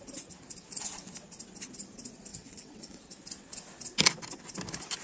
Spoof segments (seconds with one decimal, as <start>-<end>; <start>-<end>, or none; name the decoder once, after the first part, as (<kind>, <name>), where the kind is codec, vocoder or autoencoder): 2.3-3.0 (vocoder, WaveNeXt)